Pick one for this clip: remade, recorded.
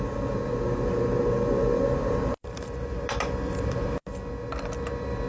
recorded